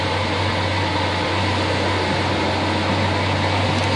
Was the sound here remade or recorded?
recorded